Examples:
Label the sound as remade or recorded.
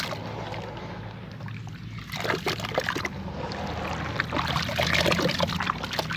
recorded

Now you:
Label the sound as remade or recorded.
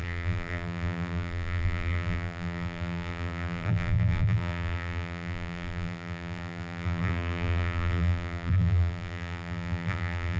remade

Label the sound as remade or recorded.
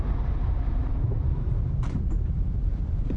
remade